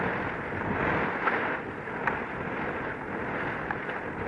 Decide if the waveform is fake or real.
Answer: real